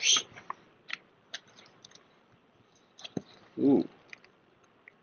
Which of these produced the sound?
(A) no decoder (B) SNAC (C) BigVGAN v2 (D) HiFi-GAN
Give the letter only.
A